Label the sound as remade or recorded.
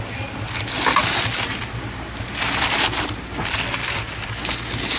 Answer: recorded